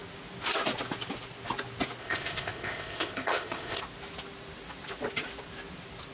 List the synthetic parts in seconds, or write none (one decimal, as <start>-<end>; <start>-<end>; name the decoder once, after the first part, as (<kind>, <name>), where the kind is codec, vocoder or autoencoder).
2.0-3.8 (codec, ZipCodec)